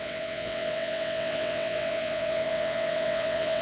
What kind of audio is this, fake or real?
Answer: fake